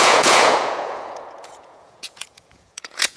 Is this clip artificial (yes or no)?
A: yes